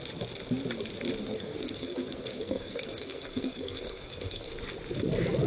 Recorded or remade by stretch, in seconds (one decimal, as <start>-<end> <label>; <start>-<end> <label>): 0.0-1.2 recorded; 1.2-4.5 remade; 4.5-5.5 recorded